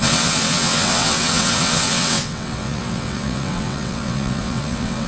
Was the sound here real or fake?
fake